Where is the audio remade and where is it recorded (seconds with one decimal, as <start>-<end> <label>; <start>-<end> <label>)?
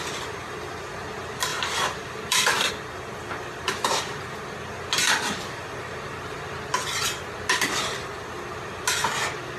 0.0-1.5 recorded; 1.5-2.7 remade; 2.7-9.6 recorded